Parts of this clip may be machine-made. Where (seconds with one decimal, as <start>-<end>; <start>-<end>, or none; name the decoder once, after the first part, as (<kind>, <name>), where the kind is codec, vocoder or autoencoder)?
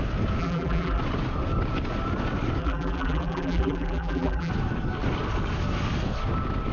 0.4-1.0 (vocoder, BigVGAN v2); 2.6-4.5